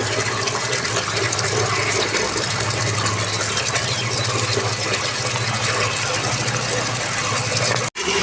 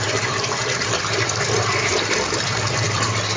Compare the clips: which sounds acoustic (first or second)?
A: first